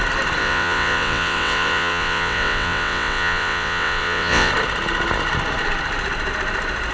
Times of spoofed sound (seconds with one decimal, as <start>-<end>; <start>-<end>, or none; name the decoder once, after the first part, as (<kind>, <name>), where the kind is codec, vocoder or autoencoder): 0.4-4.5 (vocoder, WaveNeXt)